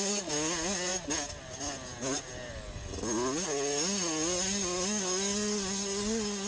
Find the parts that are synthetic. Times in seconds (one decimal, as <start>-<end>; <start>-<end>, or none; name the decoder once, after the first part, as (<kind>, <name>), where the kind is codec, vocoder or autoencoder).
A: none